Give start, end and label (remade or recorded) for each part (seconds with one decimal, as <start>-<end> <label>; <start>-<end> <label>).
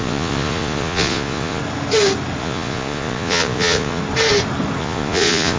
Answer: 0.0-1.6 remade; 1.6-2.4 recorded; 2.4-4.0 remade; 4.0-4.8 recorded; 4.8-5.6 remade